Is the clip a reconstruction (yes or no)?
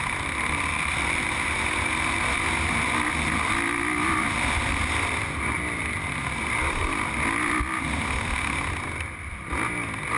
no